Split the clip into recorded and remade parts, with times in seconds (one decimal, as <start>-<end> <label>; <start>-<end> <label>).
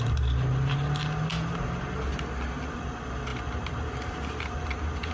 0.0-5.1 recorded